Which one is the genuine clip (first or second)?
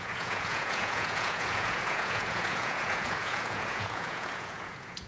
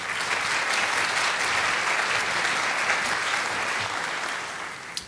second